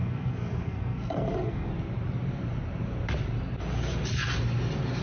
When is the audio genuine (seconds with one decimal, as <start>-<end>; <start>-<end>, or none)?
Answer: 1.7-5.0